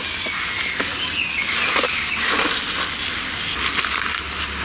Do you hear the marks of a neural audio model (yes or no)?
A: no